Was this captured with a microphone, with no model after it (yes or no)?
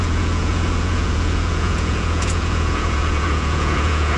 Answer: no